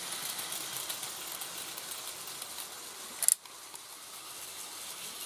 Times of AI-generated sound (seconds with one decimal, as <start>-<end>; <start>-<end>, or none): none